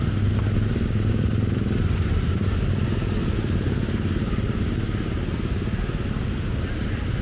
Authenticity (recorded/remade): recorded